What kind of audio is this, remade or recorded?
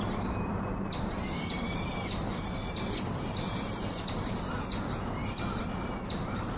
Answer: remade